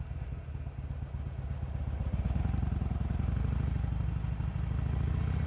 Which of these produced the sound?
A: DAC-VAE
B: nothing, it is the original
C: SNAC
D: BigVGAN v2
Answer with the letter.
B